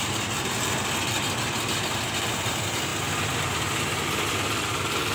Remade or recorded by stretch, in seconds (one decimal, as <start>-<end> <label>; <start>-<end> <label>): 0.0-5.1 recorded